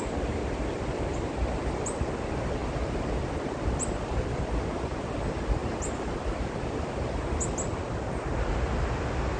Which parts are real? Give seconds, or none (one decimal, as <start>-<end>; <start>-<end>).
0.0-9.4